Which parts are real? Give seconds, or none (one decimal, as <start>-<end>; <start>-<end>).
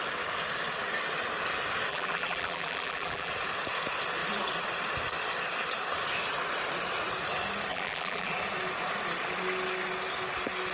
0.0-1.9; 3.3-7.7; 8.3-10.7